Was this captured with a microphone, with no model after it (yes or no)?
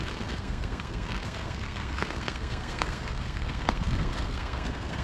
no